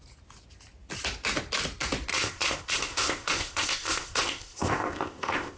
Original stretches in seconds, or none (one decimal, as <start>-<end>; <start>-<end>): 0.0-2.1